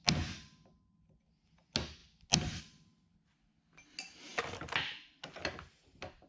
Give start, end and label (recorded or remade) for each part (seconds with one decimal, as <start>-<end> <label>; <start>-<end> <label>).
0.0-6.3 recorded